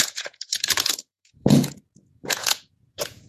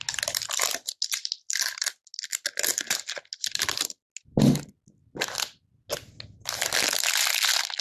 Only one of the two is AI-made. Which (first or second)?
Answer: first